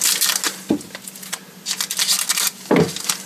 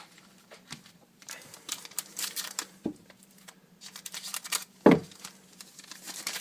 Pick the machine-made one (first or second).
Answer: second